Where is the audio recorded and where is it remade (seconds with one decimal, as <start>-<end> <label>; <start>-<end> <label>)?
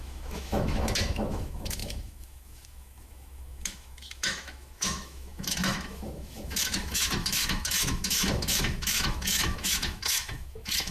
0.0-10.9 remade